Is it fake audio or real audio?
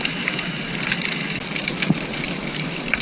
real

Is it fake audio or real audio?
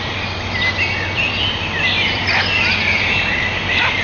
real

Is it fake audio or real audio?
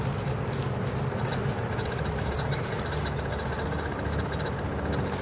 real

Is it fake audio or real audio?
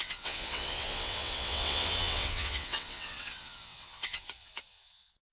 fake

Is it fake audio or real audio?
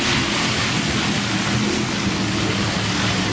real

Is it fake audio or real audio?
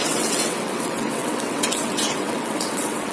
fake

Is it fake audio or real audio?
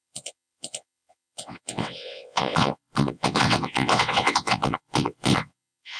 fake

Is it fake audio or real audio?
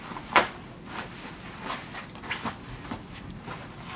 real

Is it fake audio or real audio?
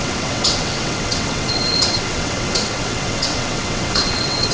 fake